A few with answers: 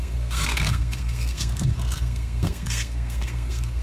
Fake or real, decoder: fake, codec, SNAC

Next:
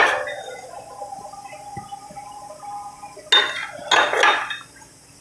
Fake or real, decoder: real